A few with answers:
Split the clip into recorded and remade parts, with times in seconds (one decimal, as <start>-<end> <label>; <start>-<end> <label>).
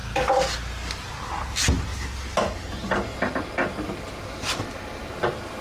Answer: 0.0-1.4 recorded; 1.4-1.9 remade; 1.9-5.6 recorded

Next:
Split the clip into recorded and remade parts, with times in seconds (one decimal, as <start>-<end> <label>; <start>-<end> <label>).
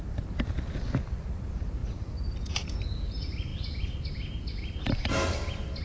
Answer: 0.0-5.8 recorded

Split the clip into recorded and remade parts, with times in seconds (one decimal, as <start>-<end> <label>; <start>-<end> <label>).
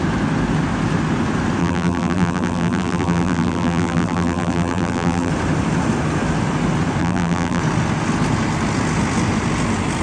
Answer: 0.0-1.6 recorded; 1.6-5.3 remade; 5.3-7.0 recorded; 7.0-7.6 remade; 7.6-10.0 recorded